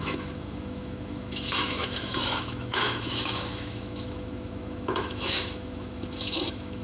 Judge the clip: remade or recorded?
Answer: remade